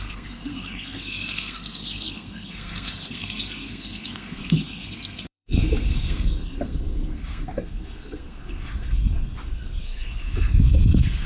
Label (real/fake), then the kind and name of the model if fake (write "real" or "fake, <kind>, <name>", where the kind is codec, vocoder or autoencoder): fake, codec, SNAC